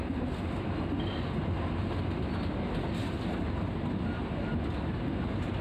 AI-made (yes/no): no